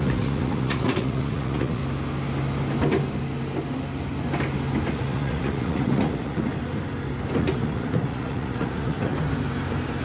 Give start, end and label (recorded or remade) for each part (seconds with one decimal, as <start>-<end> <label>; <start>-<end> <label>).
0.0-1.8 remade; 1.8-4.9 recorded; 4.9-6.5 remade; 6.5-7.4 recorded; 7.4-9.1 remade; 9.1-10.0 recorded